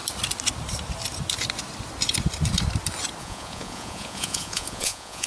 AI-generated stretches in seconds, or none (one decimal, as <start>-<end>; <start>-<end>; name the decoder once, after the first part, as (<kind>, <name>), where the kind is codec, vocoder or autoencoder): 3.2-5.3 (vocoder, Vocos)